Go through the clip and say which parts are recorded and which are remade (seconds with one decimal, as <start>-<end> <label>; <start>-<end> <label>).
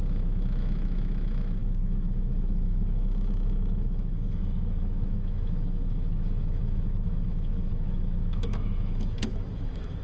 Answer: 0.0-10.0 remade